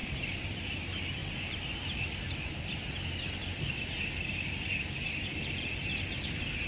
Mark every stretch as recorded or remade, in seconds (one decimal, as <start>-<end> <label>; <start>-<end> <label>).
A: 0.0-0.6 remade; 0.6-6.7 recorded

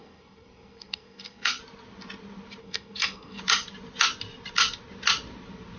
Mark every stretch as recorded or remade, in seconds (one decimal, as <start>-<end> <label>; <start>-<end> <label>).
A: 0.0-1.6 remade; 1.6-2.6 recorded; 2.6-3.4 remade; 3.4-5.8 recorded

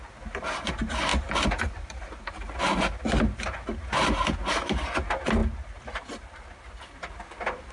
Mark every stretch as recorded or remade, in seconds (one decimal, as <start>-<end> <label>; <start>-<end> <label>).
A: 0.0-7.7 recorded

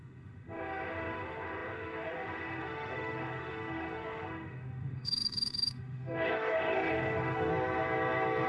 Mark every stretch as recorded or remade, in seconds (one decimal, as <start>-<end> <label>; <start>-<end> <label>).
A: 0.0-7.5 remade; 7.5-8.5 recorded